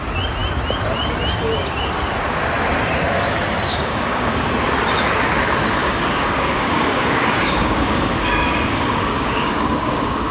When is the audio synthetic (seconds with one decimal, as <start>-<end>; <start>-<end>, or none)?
3.7-4.5; 5.8-10.3